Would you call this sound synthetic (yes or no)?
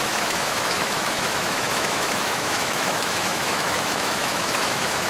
yes